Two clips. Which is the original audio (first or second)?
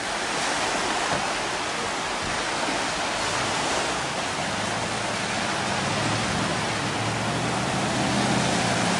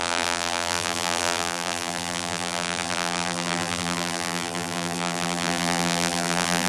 first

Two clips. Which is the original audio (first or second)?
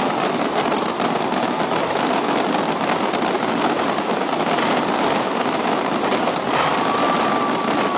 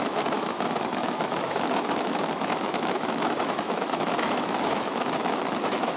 first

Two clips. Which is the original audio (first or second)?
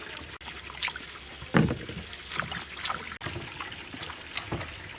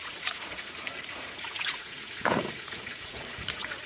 first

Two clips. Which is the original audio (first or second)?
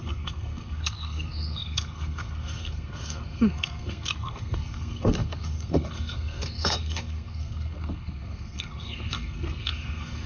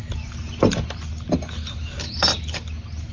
second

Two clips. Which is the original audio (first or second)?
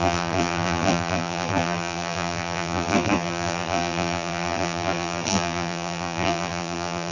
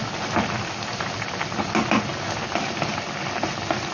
second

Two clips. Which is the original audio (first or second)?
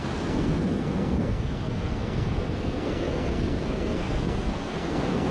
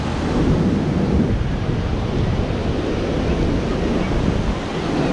second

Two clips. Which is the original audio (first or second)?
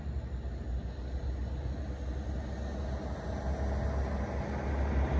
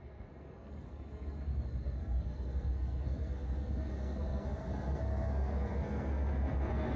first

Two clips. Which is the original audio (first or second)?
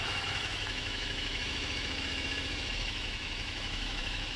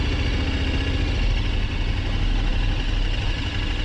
second